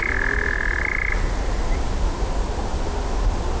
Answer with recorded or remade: recorded